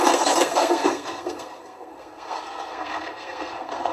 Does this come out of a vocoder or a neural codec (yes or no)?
yes